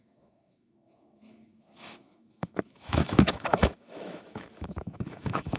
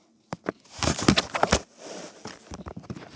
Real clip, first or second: second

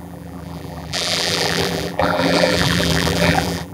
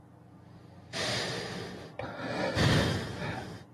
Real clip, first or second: second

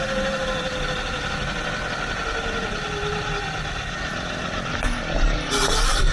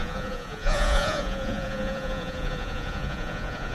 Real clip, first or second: first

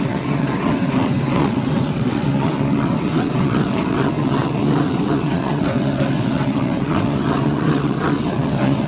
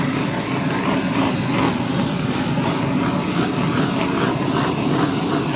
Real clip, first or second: second